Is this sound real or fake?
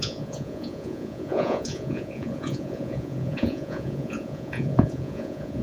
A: fake